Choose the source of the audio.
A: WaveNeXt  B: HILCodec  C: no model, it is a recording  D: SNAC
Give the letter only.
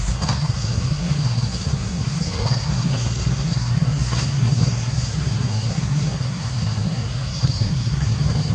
D